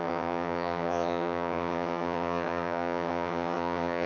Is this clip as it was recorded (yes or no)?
no